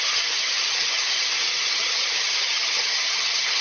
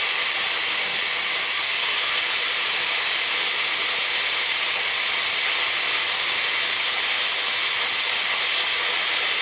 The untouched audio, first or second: second